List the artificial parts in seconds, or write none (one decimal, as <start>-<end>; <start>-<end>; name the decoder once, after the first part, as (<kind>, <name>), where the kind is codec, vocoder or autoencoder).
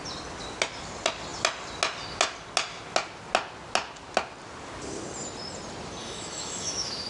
6.0-7.1 (autoencoder, DAC-VAE)